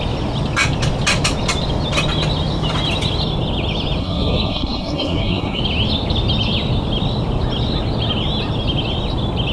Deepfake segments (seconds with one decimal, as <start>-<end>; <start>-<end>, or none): 4.0-5.6

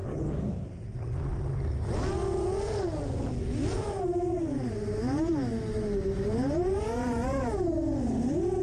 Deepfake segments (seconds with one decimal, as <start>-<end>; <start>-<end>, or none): none

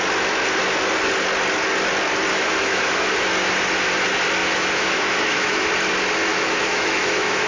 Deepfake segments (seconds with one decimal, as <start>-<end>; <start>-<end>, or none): 2.3-3.1; 4.4-5.7; 6.3-7.5

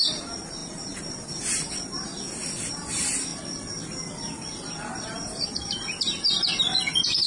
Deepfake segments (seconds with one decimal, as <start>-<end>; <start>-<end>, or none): 0.0-2.1; 2.7-3.3; 5.0-7.3